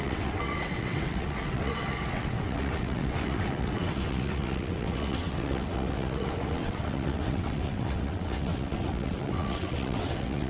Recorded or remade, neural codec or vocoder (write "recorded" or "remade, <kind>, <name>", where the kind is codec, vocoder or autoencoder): remade, vocoder, WaveNeXt